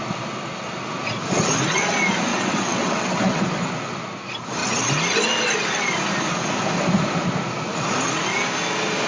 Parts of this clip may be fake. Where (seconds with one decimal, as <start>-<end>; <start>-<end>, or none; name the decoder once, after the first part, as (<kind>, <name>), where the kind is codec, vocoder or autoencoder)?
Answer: 2.3-3.4 (vocoder, WaveNeXt)

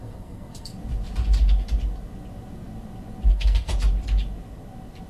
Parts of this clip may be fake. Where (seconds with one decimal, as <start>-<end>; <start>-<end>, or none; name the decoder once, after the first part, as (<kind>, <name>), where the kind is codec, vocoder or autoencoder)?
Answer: 0.0-0.7 (codec, SNAC); 3.3-3.7

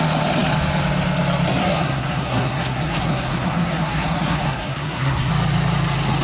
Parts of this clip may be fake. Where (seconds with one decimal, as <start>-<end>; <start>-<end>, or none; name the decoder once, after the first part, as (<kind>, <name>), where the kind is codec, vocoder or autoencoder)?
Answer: 1.6-5.3 (codec, SNAC)

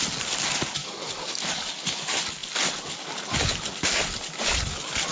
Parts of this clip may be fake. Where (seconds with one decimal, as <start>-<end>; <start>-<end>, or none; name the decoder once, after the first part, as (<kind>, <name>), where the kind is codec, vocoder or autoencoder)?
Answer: 0.8-1.7 (codec, DAC)

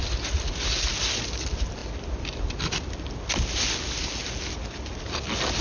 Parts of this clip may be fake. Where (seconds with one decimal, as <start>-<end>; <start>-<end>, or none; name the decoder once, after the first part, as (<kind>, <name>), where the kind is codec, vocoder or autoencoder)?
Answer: none

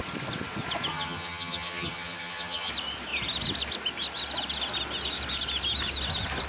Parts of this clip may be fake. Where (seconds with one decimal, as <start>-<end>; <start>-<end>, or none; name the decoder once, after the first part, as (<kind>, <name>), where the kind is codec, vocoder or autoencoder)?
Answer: 0.9-2.7 (vocoder, HiFi-GAN)

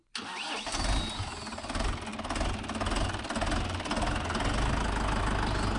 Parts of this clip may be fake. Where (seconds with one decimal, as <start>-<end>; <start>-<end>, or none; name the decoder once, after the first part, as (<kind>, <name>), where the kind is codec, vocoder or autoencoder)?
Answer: none

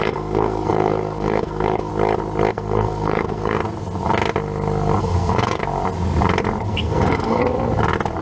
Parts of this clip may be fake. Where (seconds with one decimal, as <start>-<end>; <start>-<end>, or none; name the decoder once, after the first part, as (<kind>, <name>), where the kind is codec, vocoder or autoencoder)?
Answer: 0.0-1.9 (codec, SNAC); 2.5-3.6; 5.0-5.6; 6.6-7.4